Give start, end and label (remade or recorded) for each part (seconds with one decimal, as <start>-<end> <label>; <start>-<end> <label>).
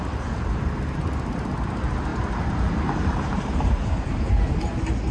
0.0-2.1 recorded; 2.1-4.5 remade; 4.5-5.1 recorded